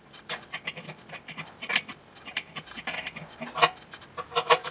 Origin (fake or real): real